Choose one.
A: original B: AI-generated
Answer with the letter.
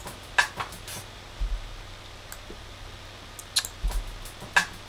A